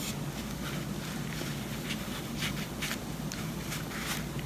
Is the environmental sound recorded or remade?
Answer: recorded